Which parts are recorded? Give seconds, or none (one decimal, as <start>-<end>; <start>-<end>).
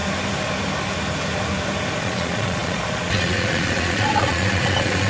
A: 0.0-2.0